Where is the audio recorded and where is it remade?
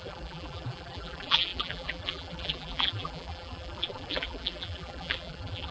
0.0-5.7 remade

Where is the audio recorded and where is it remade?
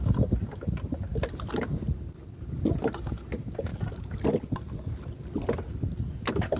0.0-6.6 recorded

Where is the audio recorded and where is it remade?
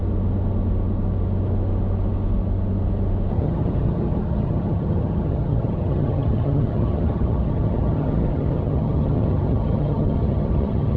0.0-3.3 recorded; 3.3-11.0 remade